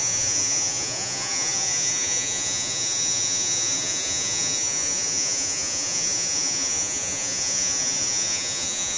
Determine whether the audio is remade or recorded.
remade